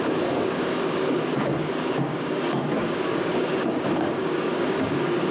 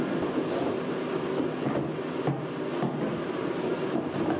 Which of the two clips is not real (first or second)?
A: first